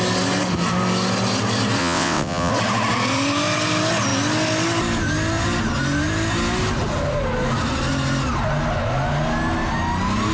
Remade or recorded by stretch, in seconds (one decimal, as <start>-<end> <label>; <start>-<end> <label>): 0.0-1.8 recorded; 1.8-2.5 remade; 2.5-10.3 recorded